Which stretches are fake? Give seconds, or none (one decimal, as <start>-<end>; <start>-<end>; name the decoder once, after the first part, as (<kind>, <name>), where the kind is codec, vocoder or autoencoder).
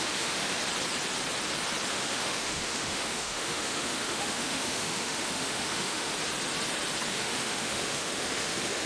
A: 0.0-0.6 (autoencoder, DAC-VAE); 1.9-6.1; 7.1-8.9